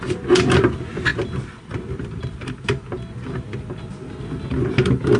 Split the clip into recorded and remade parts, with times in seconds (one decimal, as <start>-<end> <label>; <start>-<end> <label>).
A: 0.0-5.2 recorded

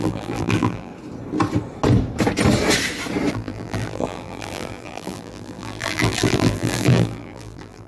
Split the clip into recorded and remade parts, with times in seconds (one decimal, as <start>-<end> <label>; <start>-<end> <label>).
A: 0.0-0.9 remade; 0.9-3.3 recorded; 3.3-7.9 remade